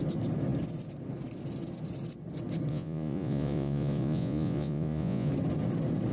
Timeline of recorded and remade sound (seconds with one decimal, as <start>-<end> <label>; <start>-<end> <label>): 0.0-2.7 recorded; 2.7-5.3 remade; 5.3-6.1 recorded